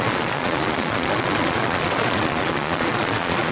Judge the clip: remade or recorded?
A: remade